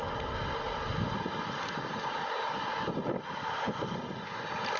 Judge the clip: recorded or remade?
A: recorded